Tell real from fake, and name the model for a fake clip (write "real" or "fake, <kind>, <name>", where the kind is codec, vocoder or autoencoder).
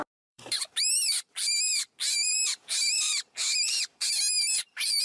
fake, vocoder, BigVGAN v2